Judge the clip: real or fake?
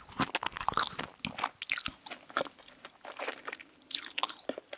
real